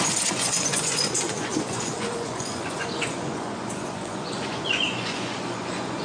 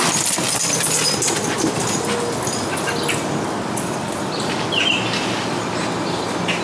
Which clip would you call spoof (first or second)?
first